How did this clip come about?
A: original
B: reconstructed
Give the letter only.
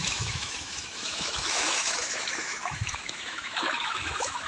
B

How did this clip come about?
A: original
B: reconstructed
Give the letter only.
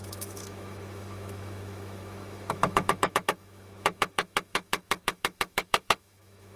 B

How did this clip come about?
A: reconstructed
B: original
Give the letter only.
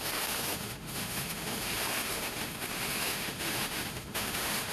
A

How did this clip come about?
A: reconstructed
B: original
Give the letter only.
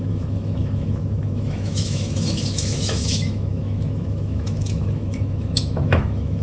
A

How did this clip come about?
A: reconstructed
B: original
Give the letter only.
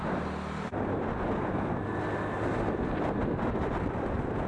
B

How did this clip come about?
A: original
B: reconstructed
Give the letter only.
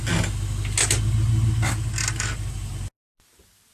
A